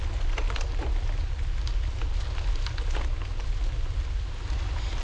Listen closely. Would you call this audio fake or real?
real